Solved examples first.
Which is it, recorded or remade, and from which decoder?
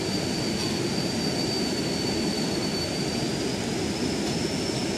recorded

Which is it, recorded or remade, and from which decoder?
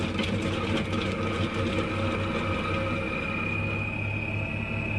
recorded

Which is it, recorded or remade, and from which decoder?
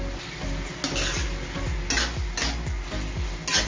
recorded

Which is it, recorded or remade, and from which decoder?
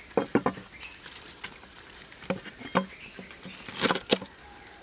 recorded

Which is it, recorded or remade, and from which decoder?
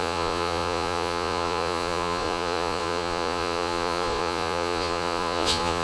remade, vocoder, Vocos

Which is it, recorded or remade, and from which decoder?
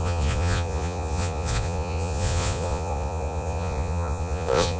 remade, vocoder, Vocos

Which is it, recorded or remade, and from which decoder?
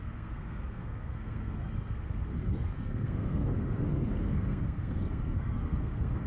remade, codec, SNAC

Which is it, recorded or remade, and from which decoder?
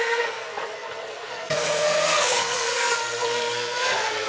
remade, codec, SNAC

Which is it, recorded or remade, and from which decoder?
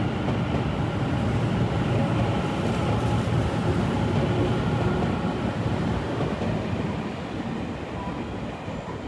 recorded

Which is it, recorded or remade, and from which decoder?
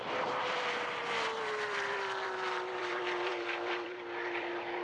remade, vocoder, BigVGAN v2